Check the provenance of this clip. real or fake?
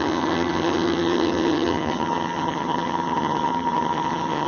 fake